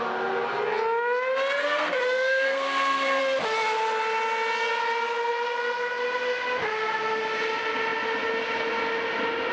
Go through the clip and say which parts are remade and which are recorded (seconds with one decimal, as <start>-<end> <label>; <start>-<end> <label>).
0.0-1.6 recorded; 1.6-3.2 remade; 3.2-9.5 recorded